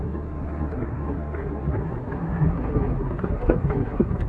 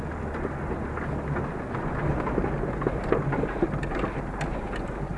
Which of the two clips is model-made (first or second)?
first